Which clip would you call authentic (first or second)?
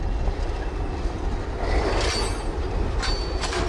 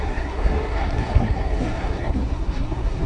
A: first